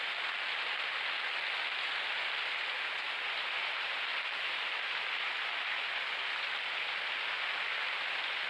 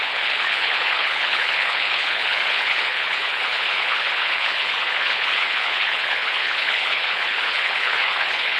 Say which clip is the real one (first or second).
first